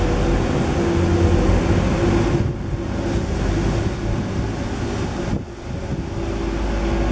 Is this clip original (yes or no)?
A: yes